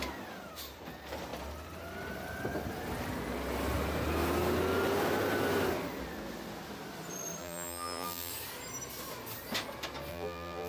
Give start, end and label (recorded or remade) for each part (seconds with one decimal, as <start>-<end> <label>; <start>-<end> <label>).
0.0-7.4 recorded; 7.4-8.3 remade; 8.3-10.1 recorded; 10.1-10.7 remade

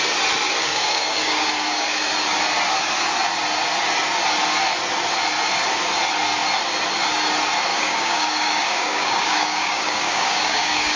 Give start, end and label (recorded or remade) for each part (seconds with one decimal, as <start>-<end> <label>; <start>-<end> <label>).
0.0-0.6 recorded; 0.6-2.1 remade; 2.1-7.7 recorded; 7.7-11.0 remade

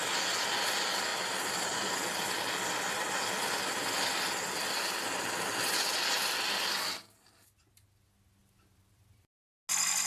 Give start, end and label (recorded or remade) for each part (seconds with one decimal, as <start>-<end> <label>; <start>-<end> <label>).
0.0-10.1 recorded